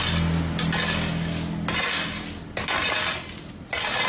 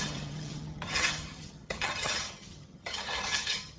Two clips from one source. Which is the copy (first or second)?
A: second